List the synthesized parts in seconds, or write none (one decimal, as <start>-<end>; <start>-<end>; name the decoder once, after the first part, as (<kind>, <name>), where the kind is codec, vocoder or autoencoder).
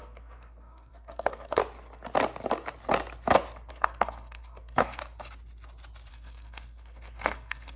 0.0-1.6 (codec, SNAC); 3.7-5.0; 6.1-7.8